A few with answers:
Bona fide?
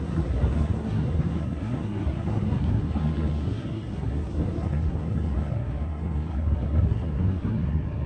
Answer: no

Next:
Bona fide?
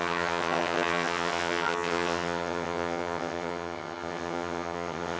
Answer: no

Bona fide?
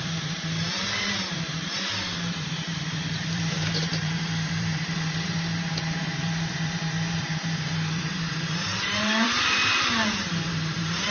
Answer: no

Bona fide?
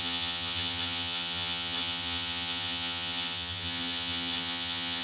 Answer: no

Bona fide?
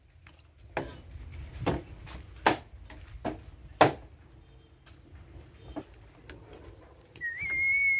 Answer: yes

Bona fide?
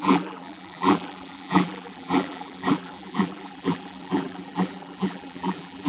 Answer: no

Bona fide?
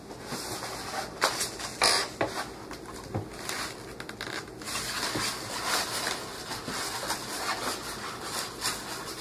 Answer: yes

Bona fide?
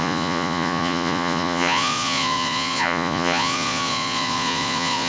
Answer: no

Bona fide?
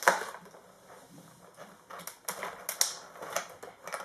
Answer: yes